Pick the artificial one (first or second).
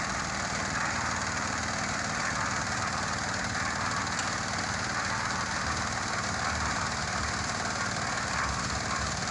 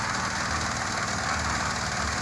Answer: first